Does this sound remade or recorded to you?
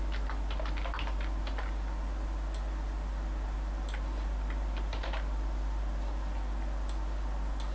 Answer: recorded